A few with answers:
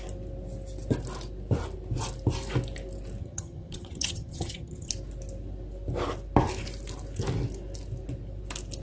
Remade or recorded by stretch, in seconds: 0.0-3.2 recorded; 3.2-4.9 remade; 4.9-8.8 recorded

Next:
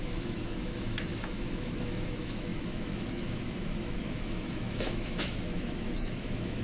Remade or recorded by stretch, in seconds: 0.0-6.6 remade

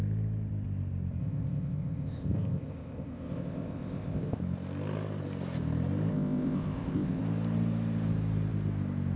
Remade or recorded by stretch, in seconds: 0.0-1.2 recorded; 1.2-4.4 remade; 4.4-6.1 recorded; 6.1-7.2 remade; 7.2-9.2 recorded